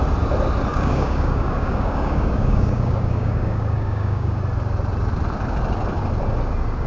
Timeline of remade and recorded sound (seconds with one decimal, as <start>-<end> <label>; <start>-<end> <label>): 0.0-0.7 recorded; 0.7-4.4 remade; 4.4-6.9 recorded